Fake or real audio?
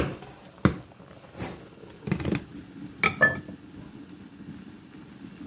real